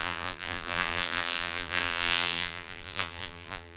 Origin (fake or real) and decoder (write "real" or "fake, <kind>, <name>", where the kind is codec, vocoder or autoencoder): fake, vocoder, BigVGAN v2